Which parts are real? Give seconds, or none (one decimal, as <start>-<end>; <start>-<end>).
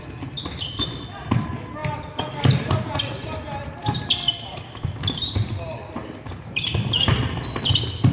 0.0-8.1